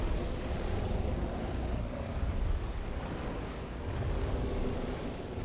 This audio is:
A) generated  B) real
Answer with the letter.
A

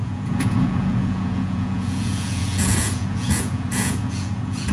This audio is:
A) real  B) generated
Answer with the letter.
B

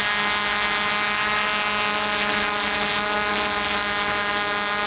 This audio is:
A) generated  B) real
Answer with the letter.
B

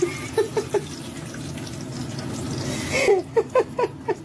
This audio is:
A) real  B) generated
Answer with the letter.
A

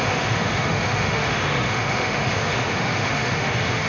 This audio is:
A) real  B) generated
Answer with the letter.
B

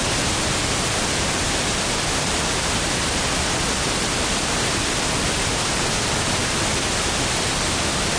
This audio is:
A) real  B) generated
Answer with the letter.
B